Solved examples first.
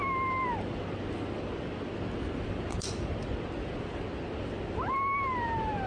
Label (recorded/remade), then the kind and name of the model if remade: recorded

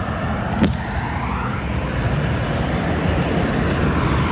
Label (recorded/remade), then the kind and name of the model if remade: recorded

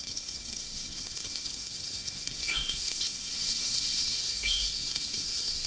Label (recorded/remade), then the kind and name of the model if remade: remade, codec, SNAC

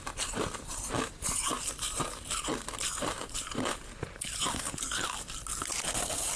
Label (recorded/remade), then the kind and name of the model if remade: remade, vocoder, BigVGAN v2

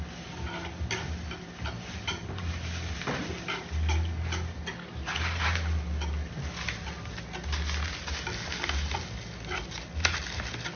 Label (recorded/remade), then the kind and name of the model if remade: recorded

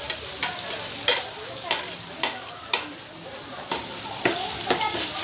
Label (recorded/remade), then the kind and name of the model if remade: recorded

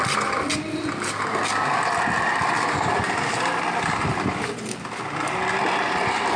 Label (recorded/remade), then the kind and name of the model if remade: recorded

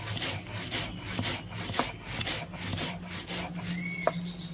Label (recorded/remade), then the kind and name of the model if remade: recorded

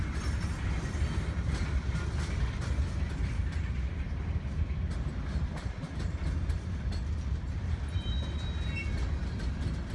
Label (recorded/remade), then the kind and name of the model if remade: recorded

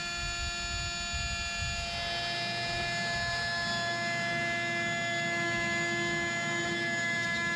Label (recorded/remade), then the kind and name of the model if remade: recorded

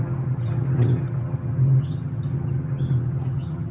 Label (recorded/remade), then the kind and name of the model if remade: remade, vocoder, HiFi-GAN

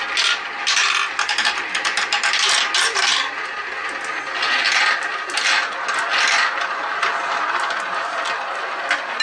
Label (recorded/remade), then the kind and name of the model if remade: recorded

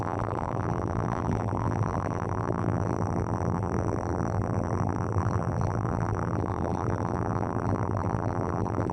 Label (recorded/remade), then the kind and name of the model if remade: remade, vocoder, BigVGAN v2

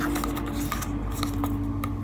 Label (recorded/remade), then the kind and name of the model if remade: recorded